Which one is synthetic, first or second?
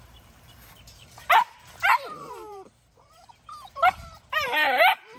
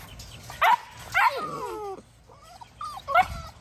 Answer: first